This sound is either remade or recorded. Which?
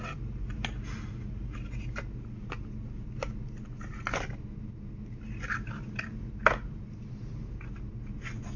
recorded